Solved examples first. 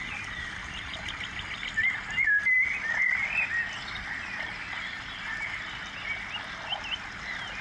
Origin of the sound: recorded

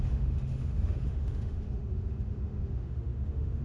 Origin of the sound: remade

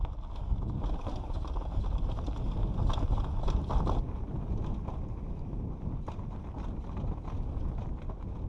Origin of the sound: recorded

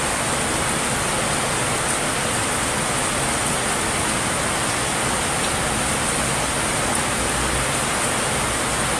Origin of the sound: recorded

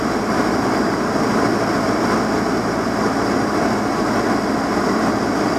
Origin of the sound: recorded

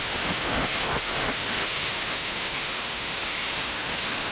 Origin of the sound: remade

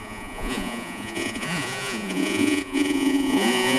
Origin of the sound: remade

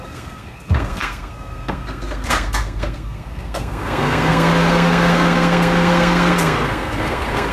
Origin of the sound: remade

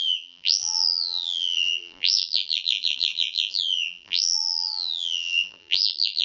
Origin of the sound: remade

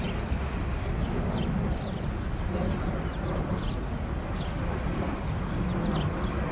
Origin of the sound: recorded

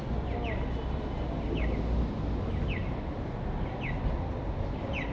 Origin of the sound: recorded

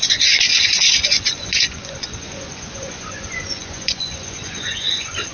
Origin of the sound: remade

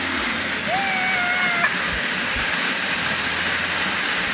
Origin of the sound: recorded